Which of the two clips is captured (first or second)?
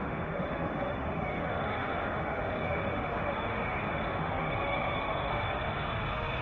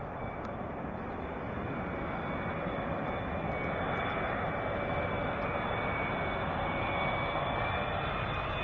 second